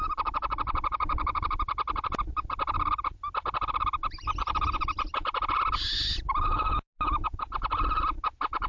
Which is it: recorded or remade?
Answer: recorded